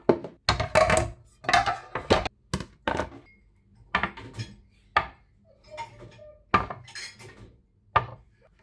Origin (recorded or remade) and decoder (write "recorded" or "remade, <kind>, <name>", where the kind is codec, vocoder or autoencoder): recorded